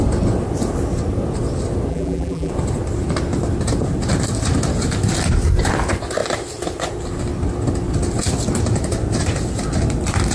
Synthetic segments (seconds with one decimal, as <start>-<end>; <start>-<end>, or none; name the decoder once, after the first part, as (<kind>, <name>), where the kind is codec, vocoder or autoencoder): 1.9-2.5 (vocoder, BigVGAN v2)